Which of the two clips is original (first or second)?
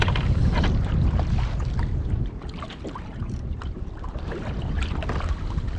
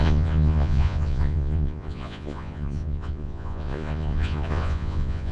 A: first